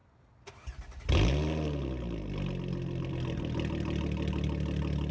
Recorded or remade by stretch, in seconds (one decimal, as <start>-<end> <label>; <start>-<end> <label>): 0.0-5.1 recorded